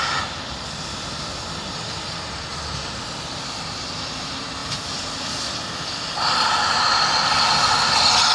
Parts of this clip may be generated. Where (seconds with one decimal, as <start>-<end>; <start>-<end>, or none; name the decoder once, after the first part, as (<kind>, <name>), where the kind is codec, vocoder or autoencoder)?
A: none